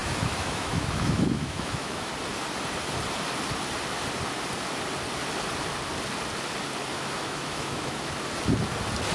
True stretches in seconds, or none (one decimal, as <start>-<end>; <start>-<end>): 2.1-6.9; 8.1-9.1